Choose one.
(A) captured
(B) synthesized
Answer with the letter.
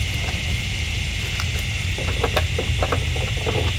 A